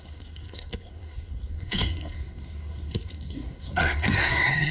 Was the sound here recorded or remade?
remade